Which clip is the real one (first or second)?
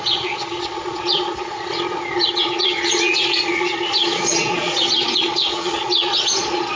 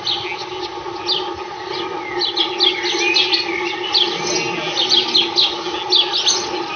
second